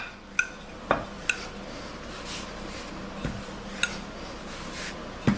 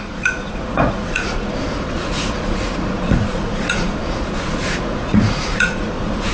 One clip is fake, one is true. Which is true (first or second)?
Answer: first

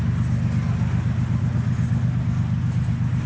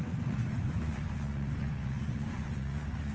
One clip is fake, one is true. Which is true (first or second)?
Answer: first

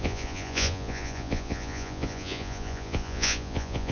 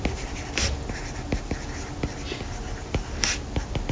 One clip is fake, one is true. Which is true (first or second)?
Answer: second